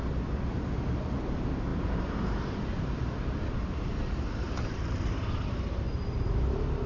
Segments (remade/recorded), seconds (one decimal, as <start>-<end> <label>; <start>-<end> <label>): 0.0-1.7 recorded; 1.7-5.8 remade; 5.8-6.9 recorded